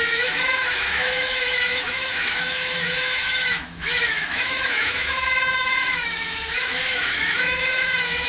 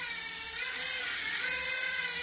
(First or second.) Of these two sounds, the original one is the second